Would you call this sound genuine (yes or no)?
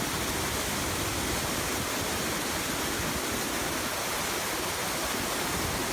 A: yes